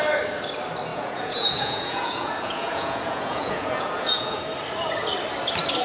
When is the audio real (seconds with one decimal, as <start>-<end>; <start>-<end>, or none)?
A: 0.0-0.9; 4.4-5.8